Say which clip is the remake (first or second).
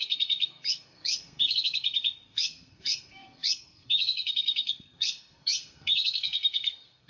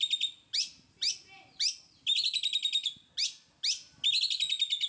first